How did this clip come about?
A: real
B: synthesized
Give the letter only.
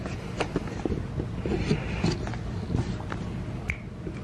A